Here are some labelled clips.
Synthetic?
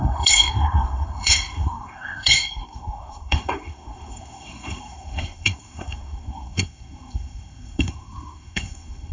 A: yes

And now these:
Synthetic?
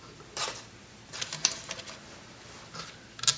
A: no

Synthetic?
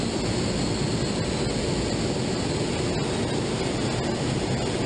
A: no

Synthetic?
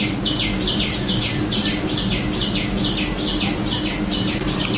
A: no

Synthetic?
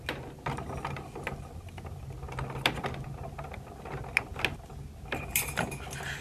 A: no